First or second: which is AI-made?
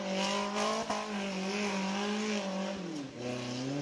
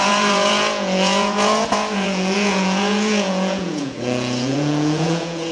second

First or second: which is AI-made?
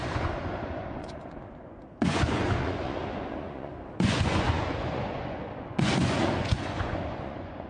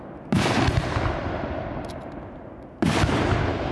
first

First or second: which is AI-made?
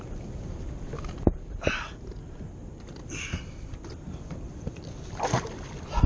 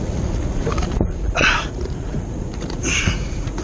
second